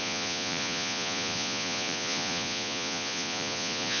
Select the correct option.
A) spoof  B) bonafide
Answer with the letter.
A